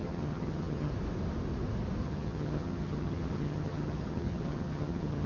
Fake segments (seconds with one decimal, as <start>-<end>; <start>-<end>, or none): 0.0-0.9; 2.0-5.3